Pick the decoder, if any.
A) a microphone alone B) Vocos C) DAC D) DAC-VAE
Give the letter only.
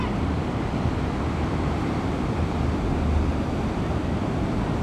A